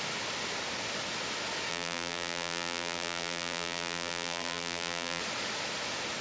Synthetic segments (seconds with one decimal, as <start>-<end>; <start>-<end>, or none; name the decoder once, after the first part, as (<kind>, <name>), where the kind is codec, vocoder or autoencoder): 1.7-5.2 (vocoder, BigVGAN v2)